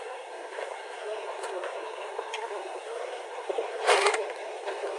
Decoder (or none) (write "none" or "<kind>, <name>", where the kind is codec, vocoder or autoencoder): codec, SNAC